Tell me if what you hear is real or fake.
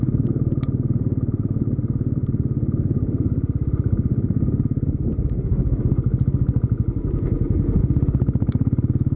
real